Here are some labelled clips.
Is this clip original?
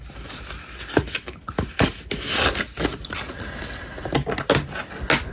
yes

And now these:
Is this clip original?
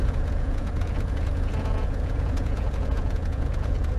no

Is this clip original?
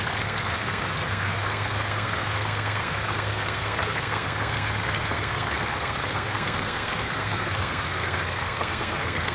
no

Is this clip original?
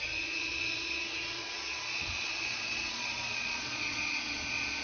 no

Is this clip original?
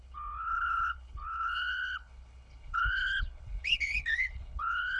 no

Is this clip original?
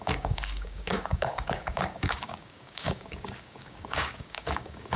no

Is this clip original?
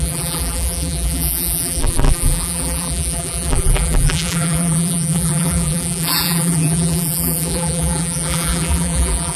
no